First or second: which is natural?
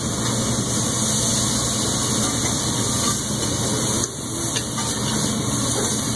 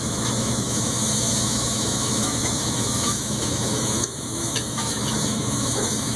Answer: first